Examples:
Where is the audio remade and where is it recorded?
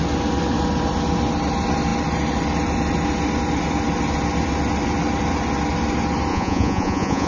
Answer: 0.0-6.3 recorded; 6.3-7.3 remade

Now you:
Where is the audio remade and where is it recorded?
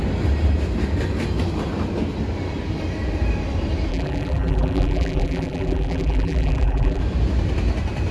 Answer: 0.0-3.9 recorded; 3.9-7.0 remade; 7.0-8.1 recorded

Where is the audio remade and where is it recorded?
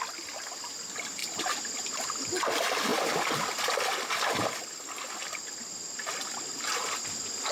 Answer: 0.0-7.5 recorded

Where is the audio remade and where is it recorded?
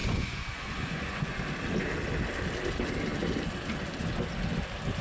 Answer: 0.0-1.4 remade; 1.4-5.0 recorded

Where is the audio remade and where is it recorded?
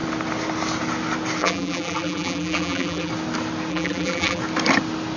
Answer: 0.0-1.4 recorded; 1.4-3.1 remade; 3.1-3.7 recorded; 3.7-4.4 remade; 4.4-5.2 recorded